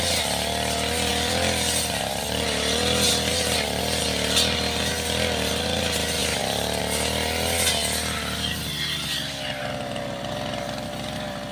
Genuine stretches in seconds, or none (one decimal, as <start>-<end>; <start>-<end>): 0.0-1.1; 3.8-6.2; 6.8-11.5